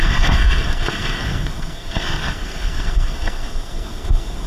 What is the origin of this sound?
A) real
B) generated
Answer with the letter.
B